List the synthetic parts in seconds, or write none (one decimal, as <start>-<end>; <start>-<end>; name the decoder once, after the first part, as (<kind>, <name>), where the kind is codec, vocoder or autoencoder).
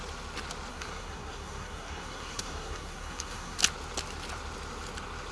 0.7-3.6 (codec, SNAC)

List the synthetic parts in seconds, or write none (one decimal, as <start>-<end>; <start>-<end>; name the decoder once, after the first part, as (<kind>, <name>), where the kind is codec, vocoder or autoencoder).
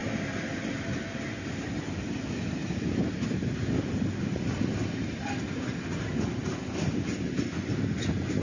none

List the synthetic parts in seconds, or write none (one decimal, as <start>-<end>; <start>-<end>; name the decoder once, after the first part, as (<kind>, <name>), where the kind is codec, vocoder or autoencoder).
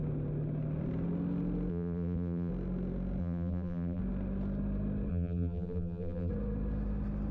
1.7-2.5 (vocoder, BigVGAN v2); 3.2-4.0; 5.1-6.3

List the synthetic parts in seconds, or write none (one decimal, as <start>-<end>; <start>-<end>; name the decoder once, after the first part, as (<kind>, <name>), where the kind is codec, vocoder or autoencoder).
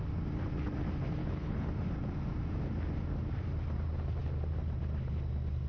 1.2-1.7 (codec, HILCodec)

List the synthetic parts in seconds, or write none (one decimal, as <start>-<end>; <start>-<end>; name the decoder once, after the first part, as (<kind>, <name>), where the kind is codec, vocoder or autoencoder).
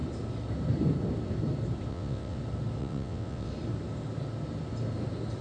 1.9-2.4 (vocoder, WaveNeXt); 2.8-3.5